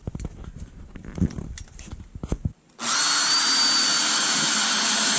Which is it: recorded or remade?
recorded